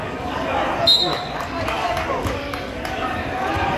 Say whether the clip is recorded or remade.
remade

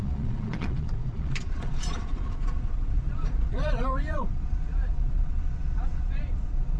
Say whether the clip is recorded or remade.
remade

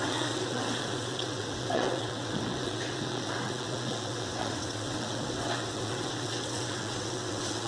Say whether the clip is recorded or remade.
remade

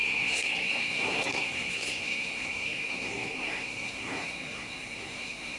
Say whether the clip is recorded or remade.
remade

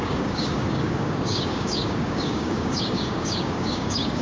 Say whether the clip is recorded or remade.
remade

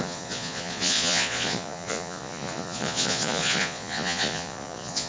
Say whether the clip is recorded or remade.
remade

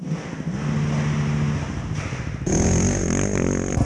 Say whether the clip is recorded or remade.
recorded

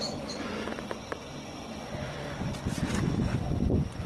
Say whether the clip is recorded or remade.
remade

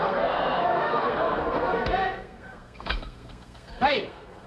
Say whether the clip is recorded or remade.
remade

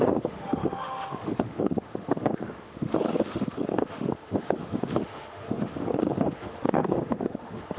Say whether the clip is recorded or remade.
remade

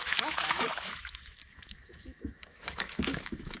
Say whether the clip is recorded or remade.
remade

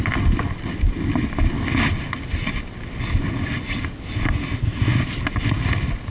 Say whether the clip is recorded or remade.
recorded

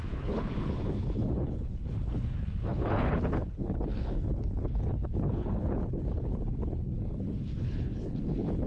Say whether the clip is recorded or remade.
remade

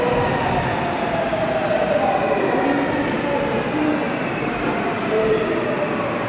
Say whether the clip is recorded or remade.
recorded